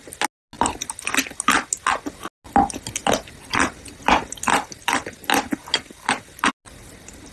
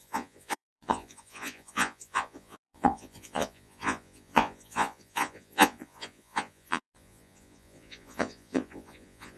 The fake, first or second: second